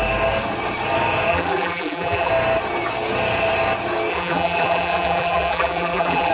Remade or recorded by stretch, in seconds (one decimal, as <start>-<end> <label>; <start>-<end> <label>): 0.0-1.3 recorded; 1.3-2.3 remade; 2.3-4.1 recorded; 4.1-6.3 remade